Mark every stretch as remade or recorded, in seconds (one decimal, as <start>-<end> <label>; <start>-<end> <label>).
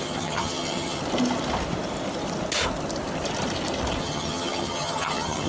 0.0-1.0 remade; 1.0-4.0 recorded; 4.0-5.5 remade